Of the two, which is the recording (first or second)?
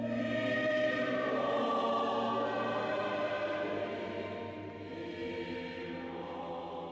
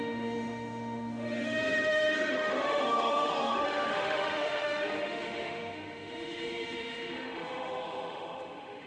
first